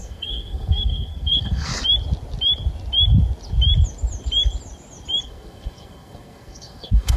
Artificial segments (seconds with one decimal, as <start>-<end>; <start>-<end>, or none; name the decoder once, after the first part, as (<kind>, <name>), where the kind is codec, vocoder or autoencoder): 0.0-1.7 (codec, SNAC); 5.2-7.2